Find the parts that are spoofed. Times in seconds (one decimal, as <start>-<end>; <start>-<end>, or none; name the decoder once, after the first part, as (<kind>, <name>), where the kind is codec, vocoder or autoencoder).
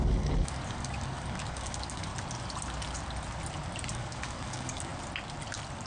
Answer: 0.0-2.1 (codec, DAC); 3.9-4.9